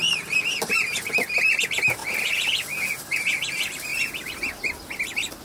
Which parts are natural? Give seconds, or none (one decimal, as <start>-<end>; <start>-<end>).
2.0-3.0; 3.9-5.4